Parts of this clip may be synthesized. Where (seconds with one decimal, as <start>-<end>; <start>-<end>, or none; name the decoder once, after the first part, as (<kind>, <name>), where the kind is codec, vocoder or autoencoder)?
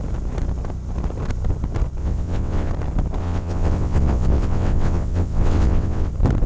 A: 2.0-2.7 (vocoder, WaveNeXt); 3.2-6.1